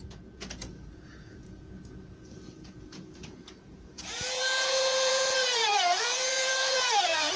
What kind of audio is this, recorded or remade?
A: remade